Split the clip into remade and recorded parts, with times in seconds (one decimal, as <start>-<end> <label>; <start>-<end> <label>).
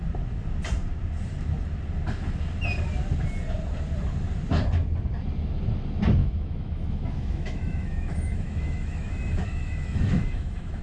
0.0-6.2 recorded; 6.2-10.8 remade